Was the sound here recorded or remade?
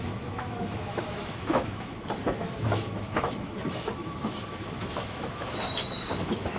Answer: remade